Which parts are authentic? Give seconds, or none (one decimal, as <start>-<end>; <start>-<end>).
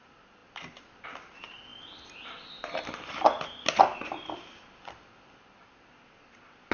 0.0-6.7